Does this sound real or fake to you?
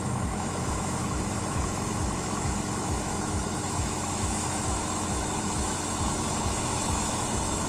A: fake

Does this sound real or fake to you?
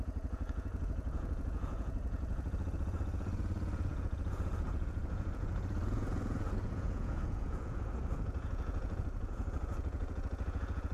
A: fake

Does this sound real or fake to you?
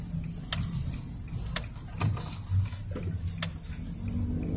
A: real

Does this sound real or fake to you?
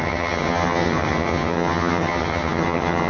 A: fake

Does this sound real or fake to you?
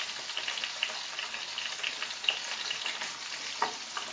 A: real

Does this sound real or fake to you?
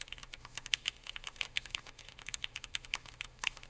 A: fake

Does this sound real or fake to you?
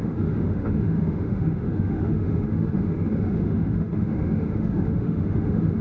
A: fake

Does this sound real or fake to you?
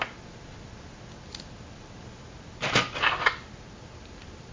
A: real